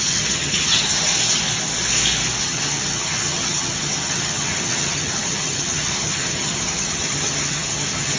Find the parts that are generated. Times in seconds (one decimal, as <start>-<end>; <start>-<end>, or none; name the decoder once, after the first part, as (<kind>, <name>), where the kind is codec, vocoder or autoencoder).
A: 0.0-1.1 (vocoder, HiFi-GAN); 2.4-8.2